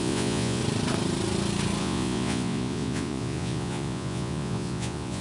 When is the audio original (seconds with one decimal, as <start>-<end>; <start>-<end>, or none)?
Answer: 0.6-1.8